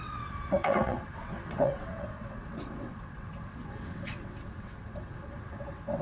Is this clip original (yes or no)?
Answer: no